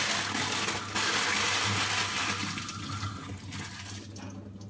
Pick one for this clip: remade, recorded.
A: recorded